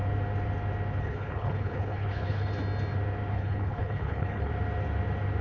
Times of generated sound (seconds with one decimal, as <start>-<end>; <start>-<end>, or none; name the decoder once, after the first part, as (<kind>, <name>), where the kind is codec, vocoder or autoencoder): 1.0-2.5 (codec, HILCodec); 3.3-4.5